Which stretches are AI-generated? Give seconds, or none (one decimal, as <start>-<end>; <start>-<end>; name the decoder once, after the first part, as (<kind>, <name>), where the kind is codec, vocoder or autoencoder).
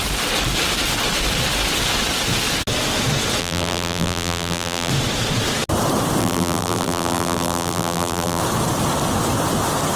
3.4-4.9 (vocoder, BigVGAN v2); 6.2-8.4